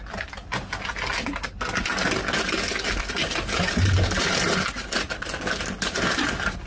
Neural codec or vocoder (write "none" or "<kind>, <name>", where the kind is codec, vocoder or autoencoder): none